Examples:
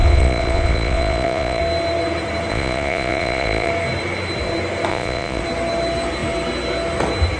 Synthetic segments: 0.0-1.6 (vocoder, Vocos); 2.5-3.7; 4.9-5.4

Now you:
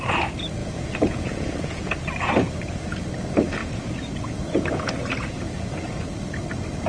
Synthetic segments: 0.6-1.9 (vocoder, Vocos); 3.6-6.0